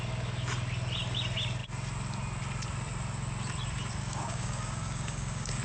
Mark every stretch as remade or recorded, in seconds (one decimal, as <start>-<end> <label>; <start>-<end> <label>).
0.0-4.0 recorded; 4.0-5.6 remade